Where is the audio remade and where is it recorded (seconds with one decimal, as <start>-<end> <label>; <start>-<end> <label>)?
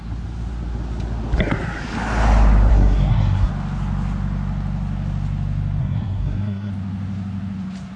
0.0-2.7 recorded; 2.7-3.5 remade; 3.5-5.8 recorded; 5.8-6.7 remade; 6.7-8.0 recorded